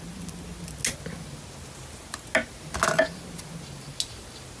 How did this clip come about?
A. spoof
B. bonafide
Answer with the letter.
B